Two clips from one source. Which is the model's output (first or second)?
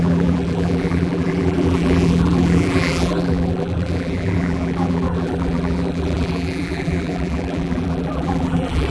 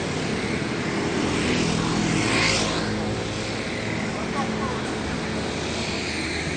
first